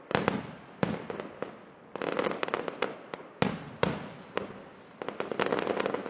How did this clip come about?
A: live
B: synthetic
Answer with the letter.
A